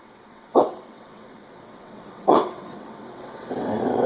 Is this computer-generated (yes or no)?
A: yes